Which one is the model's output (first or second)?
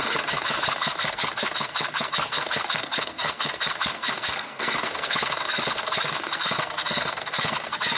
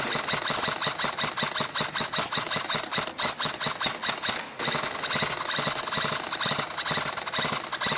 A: first